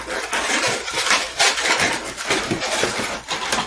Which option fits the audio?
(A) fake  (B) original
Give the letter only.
B